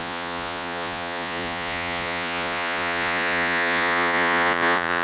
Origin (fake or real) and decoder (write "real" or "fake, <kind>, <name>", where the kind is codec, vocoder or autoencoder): fake, vocoder, Vocos